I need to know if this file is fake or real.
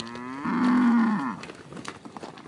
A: real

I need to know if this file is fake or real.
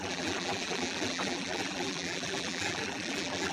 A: fake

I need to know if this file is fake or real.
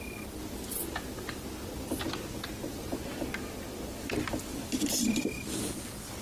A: fake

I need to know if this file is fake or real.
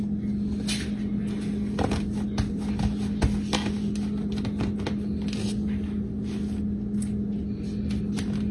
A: real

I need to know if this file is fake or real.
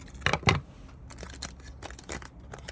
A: real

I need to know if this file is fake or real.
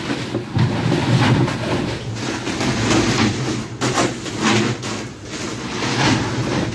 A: real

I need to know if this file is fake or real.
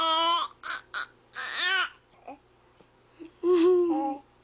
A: real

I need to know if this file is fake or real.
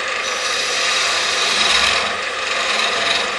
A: fake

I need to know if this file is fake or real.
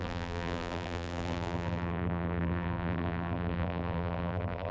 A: fake